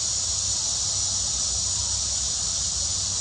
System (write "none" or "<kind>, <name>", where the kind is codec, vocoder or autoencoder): vocoder, BigVGAN v2